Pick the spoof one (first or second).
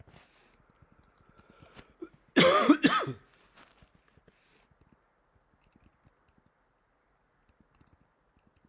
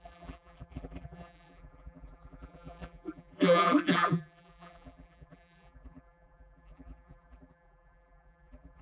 second